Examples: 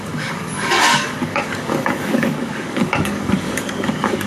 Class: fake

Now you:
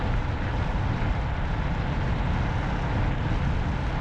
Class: real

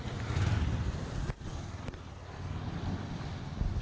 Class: real